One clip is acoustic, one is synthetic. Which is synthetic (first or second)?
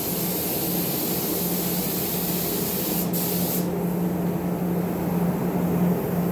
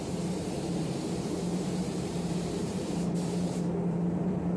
second